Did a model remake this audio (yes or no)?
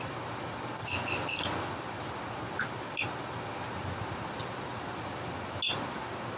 no